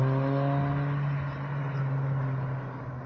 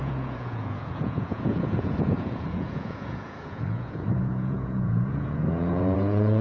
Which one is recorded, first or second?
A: first